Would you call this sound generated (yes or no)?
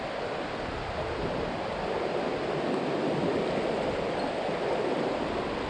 no